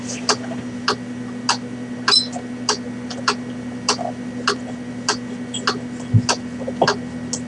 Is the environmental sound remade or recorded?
recorded